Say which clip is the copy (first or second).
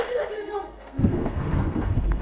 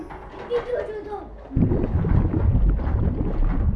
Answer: first